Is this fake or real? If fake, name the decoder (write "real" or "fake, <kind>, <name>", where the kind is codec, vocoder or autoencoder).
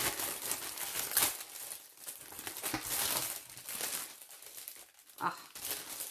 real